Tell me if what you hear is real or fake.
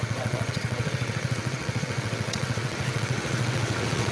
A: fake